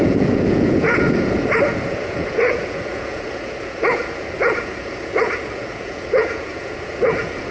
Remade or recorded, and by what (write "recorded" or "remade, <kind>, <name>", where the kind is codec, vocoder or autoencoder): remade, vocoder, Vocos